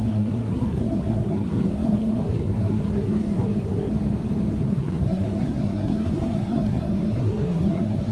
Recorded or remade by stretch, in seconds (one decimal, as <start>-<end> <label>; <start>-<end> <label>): 0.0-3.9 remade; 3.9-4.7 recorded; 4.7-8.1 remade

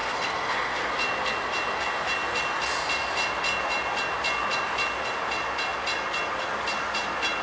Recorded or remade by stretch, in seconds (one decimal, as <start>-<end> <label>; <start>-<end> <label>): 0.0-0.9 remade; 0.9-7.4 recorded